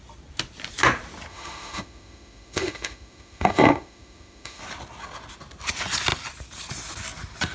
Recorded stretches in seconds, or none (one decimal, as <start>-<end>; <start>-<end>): 0.0-1.3; 4.6-7.5